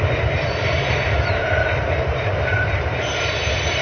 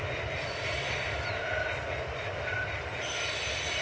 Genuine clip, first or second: second